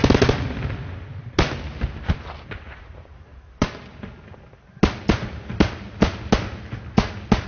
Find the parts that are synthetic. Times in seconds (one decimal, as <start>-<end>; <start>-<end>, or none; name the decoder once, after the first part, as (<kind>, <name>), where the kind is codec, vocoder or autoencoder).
none